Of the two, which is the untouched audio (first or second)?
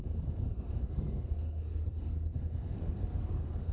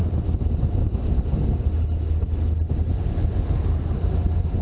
second